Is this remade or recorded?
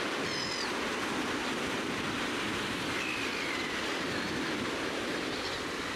recorded